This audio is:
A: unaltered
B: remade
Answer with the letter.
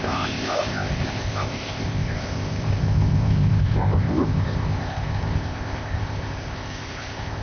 B